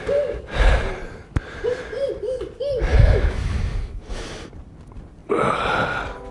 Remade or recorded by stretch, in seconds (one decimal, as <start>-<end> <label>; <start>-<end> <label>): 0.0-2.9 recorded; 2.9-4.3 remade; 4.3-6.3 recorded

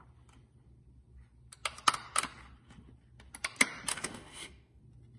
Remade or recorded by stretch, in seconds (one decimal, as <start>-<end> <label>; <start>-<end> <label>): 0.0-3.9 recorded; 3.9-4.8 remade; 4.8-5.2 recorded

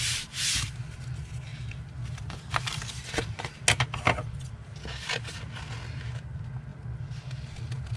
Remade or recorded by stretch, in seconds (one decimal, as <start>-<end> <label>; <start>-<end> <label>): 0.0-8.0 recorded

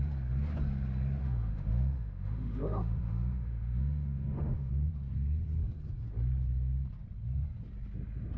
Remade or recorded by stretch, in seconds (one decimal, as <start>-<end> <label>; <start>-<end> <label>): 0.0-1.2 recorded; 1.2-4.7 remade; 4.7-8.4 recorded

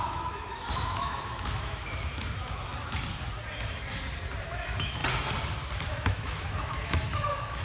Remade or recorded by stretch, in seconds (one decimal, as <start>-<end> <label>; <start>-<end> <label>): 0.0-2.7 remade; 2.7-4.4 recorded; 4.4-5.0 remade; 5.0-5.9 recorded; 5.9-7.6 remade

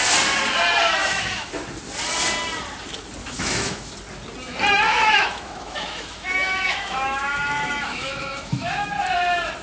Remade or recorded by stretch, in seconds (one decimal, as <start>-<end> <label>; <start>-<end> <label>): 0.0-1.0 recorded; 1.0-1.5 remade; 1.5-3.2 recorded; 3.2-3.9 remade; 3.9-4.9 recorded; 4.9-8.9 remade; 8.9-9.6 recorded